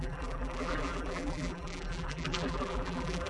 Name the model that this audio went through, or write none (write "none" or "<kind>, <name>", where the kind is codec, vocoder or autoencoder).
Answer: vocoder, BigVGAN v2